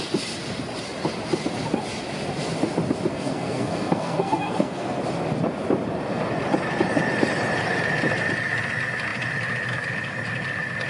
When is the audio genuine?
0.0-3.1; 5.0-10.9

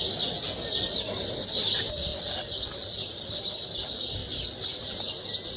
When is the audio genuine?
0.0-2.1; 3.7-5.6

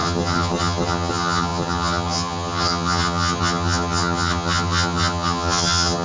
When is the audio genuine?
none

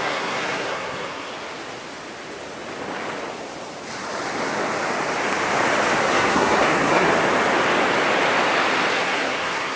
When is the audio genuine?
1.3-6.0; 7.1-8.9